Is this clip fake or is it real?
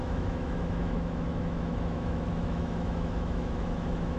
fake